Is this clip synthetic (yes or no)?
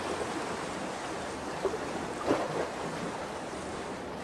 no